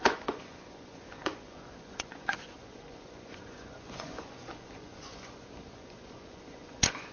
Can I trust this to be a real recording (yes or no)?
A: no